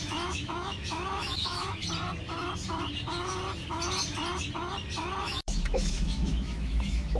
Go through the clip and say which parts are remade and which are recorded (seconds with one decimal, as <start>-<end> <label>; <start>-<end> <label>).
0.0-1.8 remade; 1.8-5.2 recorded; 5.2-7.2 remade